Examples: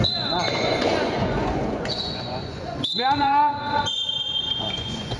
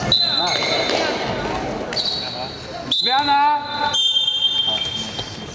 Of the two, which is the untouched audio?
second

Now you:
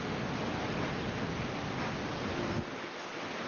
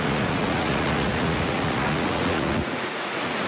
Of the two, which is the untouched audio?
first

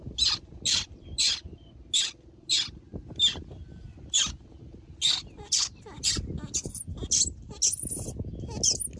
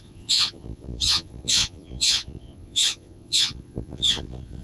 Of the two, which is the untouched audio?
first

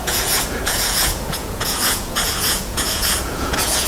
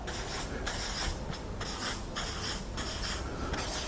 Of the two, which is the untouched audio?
second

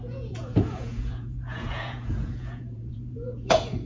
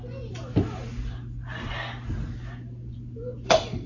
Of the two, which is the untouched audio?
second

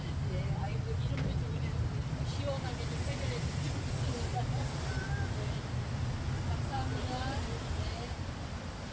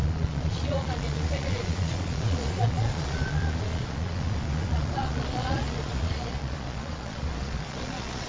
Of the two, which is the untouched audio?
first